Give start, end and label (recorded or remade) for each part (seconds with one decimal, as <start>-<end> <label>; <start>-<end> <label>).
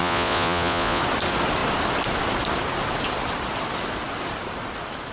0.0-1.0 remade; 1.0-5.1 recorded